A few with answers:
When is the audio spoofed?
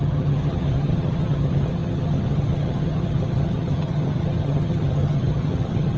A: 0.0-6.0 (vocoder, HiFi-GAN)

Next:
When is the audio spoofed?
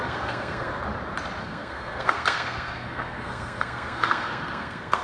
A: 0.0-0.7 (codec, SNAC); 1.4-5.0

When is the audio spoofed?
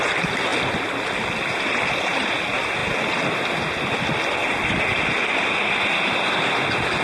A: none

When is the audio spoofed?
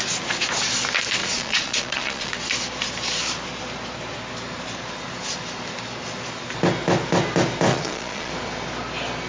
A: 1.2-2.3 (vocoder, Vocos); 7.7-8.3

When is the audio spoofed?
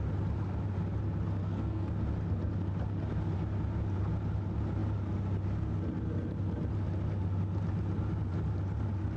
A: 1.4-1.9 (codec, SNAC)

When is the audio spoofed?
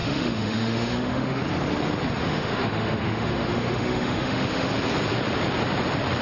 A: 0.0-1.4 (autoencoder, DAC-VAE); 2.2-4.7